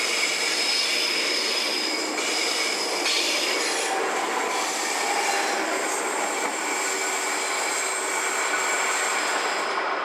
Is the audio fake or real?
real